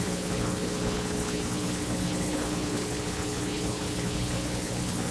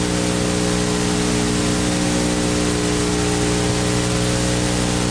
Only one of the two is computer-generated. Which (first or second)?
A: first